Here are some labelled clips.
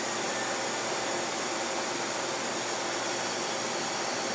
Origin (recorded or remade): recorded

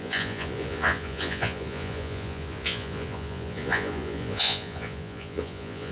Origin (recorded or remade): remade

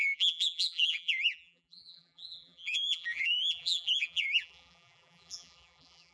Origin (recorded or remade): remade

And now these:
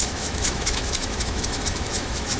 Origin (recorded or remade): remade